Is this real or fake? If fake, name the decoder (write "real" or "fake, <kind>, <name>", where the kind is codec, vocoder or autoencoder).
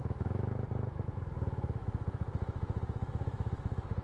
fake, autoencoder, DAC-VAE